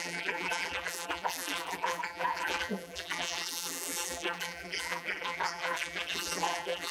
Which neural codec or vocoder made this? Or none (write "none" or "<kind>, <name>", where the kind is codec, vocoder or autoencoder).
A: vocoder, BigVGAN v2